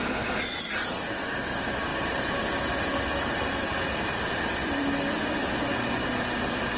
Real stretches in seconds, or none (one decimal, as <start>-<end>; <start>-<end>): 0.0-6.8